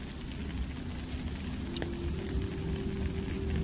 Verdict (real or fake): real